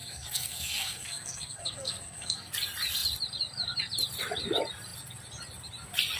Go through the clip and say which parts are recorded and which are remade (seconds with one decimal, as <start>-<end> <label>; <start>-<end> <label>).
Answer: 0.0-2.5 remade; 2.5-6.2 recorded